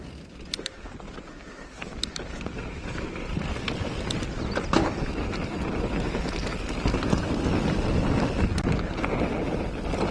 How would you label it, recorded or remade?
recorded